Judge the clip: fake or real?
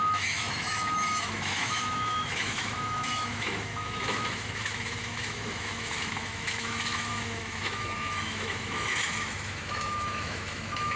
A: fake